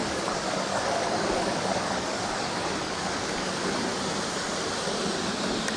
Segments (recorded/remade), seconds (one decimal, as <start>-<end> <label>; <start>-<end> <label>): 0.0-3.5 remade; 3.5-5.8 recorded